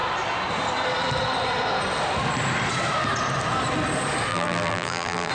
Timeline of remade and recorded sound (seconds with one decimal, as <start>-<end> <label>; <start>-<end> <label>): 0.0-4.3 recorded; 4.3-5.3 remade